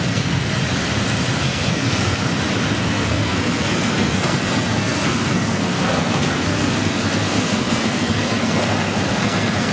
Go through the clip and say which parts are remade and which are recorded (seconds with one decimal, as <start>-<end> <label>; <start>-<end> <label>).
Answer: 0.0-0.5 remade; 0.5-1.4 recorded; 1.4-2.3 remade; 2.3-2.8 recorded; 2.8-9.7 remade